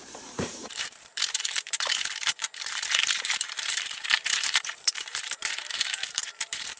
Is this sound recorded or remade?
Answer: remade